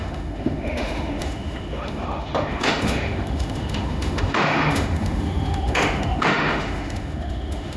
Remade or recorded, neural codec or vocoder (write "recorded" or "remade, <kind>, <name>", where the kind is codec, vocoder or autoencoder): remade, autoencoder, DAC-VAE